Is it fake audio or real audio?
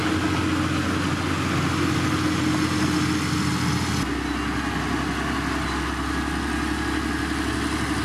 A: real